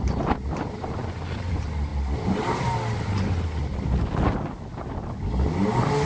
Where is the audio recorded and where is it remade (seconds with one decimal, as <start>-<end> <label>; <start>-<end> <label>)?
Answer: 0.0-6.1 recorded